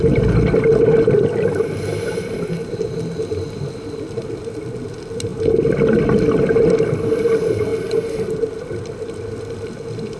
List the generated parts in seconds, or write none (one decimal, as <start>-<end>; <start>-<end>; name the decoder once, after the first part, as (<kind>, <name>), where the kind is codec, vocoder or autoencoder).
none